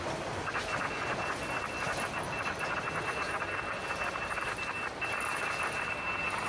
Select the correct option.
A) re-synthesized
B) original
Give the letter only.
B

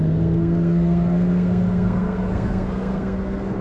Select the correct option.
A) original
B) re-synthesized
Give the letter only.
B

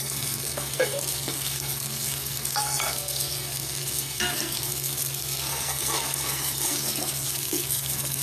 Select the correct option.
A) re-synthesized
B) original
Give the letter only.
A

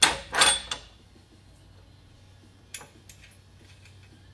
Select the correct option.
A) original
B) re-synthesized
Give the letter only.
A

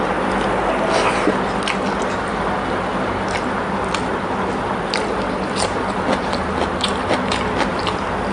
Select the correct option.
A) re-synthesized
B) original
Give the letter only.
B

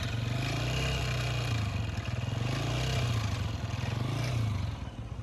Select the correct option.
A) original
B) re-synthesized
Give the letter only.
A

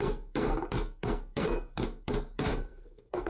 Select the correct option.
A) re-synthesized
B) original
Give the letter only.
A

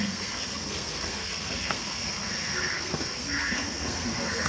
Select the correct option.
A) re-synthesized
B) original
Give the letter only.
A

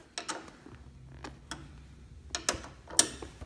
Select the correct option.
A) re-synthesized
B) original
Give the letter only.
B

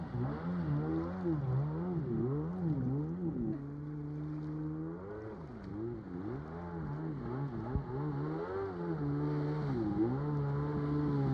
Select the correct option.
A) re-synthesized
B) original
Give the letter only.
B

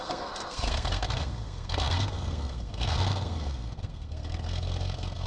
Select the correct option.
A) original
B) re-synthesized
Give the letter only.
B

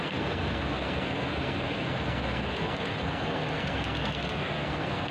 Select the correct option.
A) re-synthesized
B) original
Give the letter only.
A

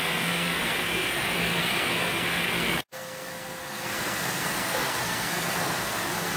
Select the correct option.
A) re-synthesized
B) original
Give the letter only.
A